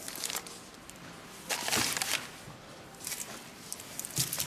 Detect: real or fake real